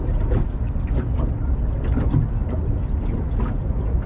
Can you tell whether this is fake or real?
real